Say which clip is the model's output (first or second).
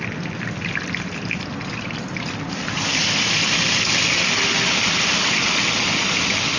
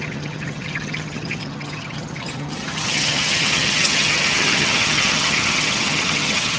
second